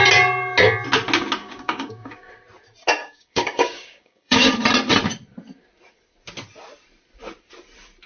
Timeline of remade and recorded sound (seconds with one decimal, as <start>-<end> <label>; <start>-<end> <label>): 0.0-1.4 recorded; 1.4-2.3 remade; 2.3-3.0 recorded; 3.0-4.5 remade; 4.5-8.1 recorded